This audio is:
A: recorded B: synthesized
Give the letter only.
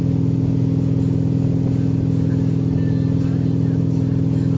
A